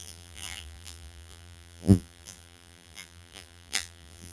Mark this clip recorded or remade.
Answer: remade